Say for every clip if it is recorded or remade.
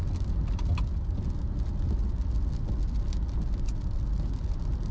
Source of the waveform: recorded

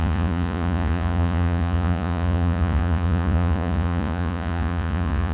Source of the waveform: remade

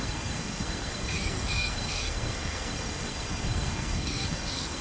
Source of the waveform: remade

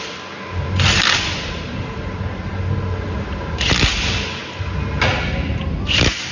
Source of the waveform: recorded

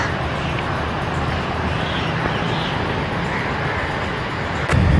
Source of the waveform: recorded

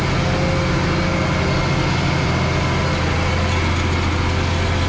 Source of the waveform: recorded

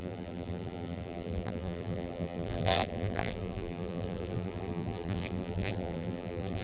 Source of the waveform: remade